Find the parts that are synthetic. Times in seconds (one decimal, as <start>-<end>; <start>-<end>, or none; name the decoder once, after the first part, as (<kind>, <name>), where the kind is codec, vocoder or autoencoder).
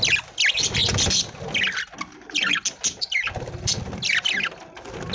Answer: none